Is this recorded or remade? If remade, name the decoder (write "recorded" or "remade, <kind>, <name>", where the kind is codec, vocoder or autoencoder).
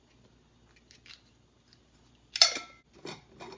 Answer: recorded